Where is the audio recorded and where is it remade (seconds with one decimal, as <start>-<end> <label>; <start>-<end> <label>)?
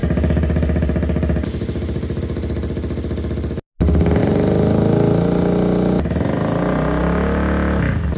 0.0-2.2 remade; 2.2-8.2 recorded